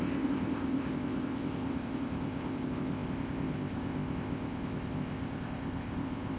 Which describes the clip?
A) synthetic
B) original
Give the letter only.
A